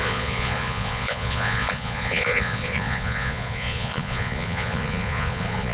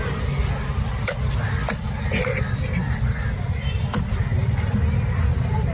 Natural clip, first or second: second